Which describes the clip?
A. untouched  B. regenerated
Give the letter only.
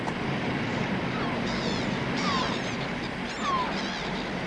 A